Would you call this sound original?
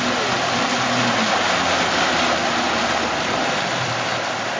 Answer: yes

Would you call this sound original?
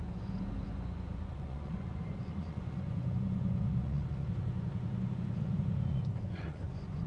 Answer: no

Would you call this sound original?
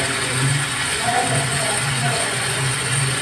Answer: no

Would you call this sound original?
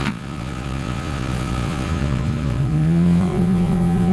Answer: no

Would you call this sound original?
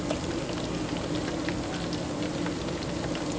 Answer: yes